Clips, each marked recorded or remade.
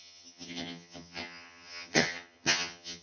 remade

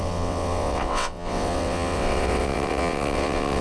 remade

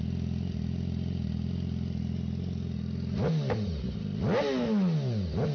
recorded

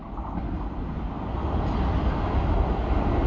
recorded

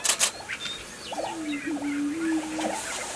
recorded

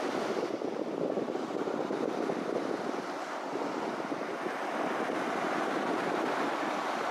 recorded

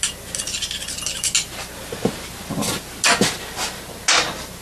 recorded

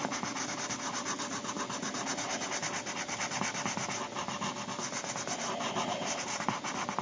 recorded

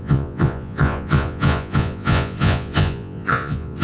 remade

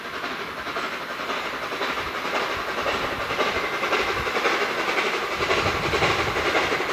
recorded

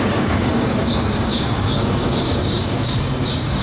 remade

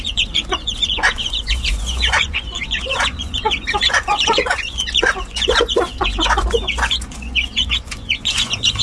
remade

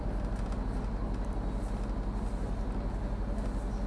recorded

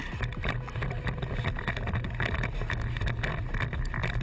recorded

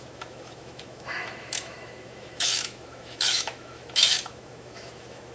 remade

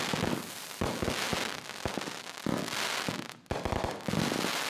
recorded